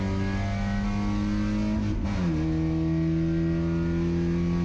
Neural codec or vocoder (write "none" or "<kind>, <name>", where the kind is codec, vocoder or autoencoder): none